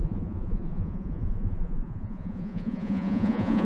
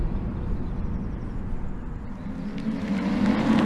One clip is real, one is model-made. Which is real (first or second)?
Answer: second